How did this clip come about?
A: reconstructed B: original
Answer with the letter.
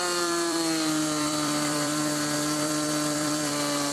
A